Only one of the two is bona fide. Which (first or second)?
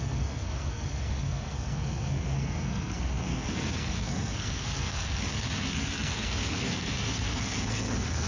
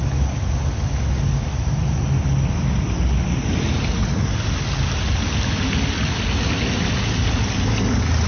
second